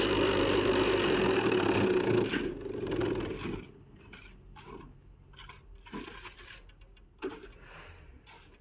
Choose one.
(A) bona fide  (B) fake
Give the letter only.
A